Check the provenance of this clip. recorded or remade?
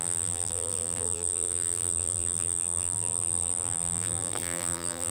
remade